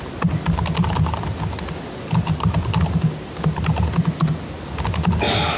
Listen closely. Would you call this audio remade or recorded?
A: recorded